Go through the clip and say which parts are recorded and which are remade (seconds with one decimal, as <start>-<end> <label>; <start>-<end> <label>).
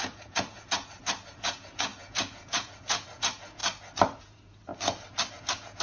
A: 0.0-3.6 remade; 3.6-4.2 recorded; 4.2-4.7 remade; 4.7-5.3 recorded; 5.3-5.8 remade